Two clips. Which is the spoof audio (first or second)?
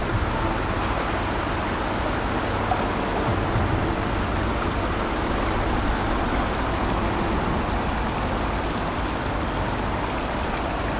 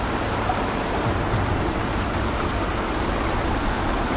second